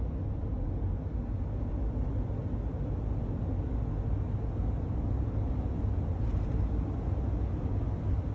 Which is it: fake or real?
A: real